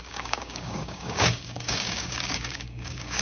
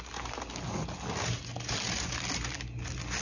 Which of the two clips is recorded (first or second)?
second